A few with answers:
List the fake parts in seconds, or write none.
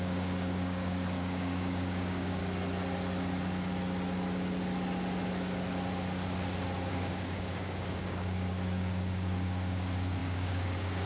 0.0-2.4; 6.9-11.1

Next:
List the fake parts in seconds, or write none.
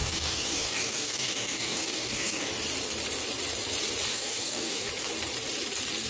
0.0-2.5; 4.1-4.9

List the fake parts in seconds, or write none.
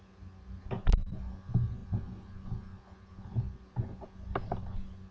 none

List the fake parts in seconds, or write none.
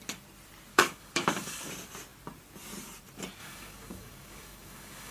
0.7-1.7; 3.4-5.1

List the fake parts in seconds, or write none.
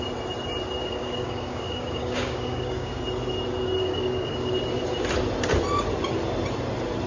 0.8-3.0; 3.8-4.5